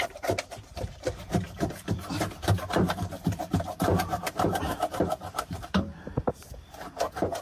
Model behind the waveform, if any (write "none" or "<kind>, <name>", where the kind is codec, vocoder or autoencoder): vocoder, BigVGAN v2